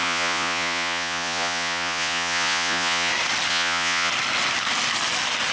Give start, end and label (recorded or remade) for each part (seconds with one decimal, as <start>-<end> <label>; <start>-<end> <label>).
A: 0.0-3.1 remade; 3.1-3.5 recorded; 3.5-4.1 remade; 4.1-5.5 recorded